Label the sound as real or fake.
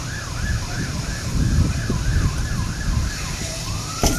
fake